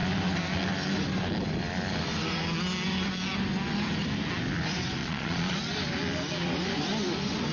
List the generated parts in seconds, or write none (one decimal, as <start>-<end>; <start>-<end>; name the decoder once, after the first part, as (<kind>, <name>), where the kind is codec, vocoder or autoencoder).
5.0-5.5 (vocoder, Vocos)